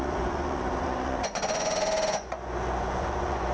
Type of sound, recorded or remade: remade